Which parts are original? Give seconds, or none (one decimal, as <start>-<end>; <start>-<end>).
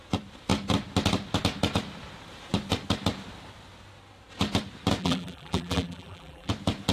0.0-5.0; 6.5-6.9